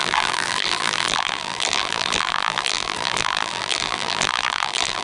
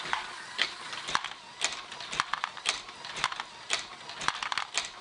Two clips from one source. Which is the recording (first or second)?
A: second